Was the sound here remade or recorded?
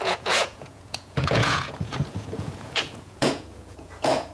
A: remade